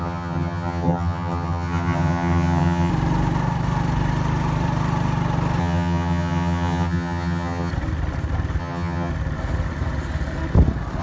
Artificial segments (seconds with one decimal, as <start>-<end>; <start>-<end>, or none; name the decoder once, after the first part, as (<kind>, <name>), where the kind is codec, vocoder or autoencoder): 0.0-2.9 (vocoder, HiFi-GAN); 5.6-7.7; 8.6-9.1